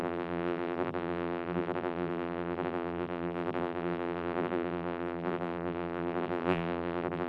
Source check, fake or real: fake